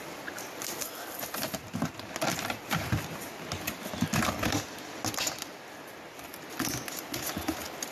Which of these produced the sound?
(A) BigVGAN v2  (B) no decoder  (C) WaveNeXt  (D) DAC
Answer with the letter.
B